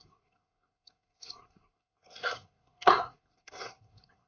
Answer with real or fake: fake